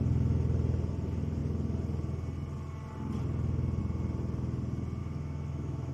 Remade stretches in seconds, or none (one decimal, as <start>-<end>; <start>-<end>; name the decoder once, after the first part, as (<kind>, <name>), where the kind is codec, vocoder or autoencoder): 5.0-5.9 (autoencoder, DAC-VAE)